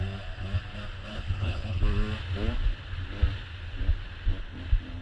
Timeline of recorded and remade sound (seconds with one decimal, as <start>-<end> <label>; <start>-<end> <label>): 0.0-1.0 recorded; 1.0-1.8 remade; 1.8-5.0 recorded